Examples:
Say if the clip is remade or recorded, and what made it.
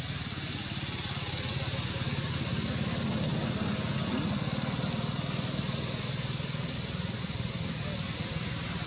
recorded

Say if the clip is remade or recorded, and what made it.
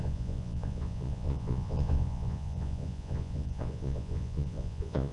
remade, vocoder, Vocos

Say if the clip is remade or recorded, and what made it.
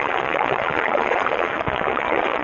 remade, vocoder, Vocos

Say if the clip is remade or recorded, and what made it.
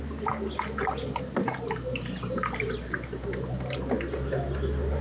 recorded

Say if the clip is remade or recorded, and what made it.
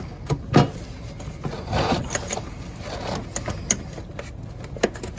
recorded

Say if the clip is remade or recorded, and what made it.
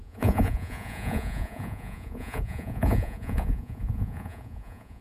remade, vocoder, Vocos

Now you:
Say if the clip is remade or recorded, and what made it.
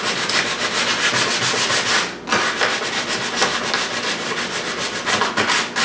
recorded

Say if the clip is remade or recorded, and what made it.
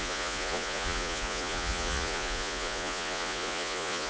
remade, vocoder, Vocos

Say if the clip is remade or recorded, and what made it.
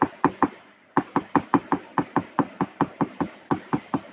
recorded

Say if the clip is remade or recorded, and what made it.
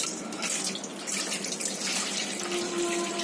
recorded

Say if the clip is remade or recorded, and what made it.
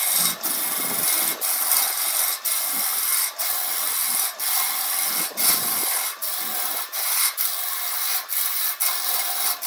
recorded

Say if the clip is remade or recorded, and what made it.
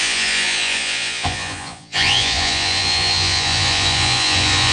remade, vocoder, Vocos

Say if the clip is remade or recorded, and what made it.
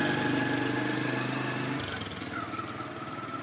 recorded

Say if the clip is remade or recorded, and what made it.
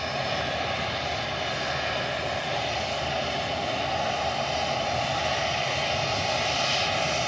recorded